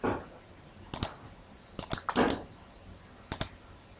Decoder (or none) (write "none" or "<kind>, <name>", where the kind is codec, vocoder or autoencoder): none